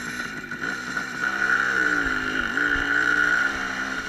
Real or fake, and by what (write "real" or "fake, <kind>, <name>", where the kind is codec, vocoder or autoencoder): fake, vocoder, BigVGAN v2